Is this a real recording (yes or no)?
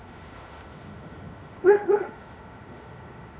no